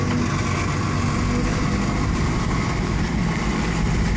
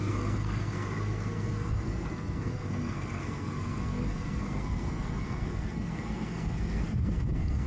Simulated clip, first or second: second